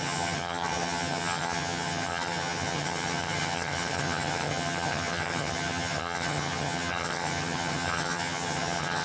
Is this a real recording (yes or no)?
no